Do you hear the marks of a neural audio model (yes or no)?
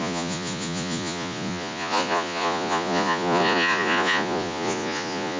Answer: yes